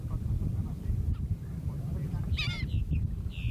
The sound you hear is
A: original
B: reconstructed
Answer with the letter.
B